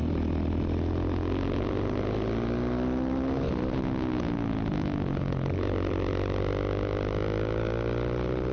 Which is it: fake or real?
real